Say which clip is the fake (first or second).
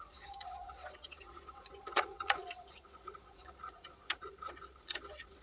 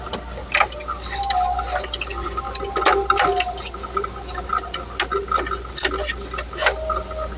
first